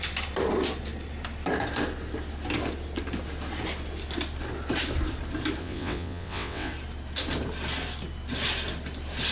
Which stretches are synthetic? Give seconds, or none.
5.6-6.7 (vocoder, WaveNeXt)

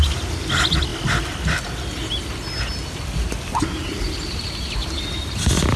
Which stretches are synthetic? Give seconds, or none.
none

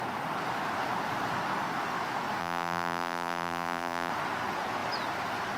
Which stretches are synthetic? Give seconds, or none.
2.4-4.1 (vocoder, BigVGAN v2)

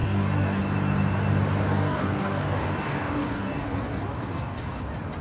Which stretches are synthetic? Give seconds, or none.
0.0-0.6 (codec, DAC); 1.7-4.8

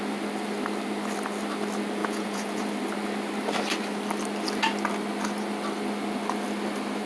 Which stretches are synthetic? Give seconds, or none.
2.0-2.7 (vocoder, Vocos)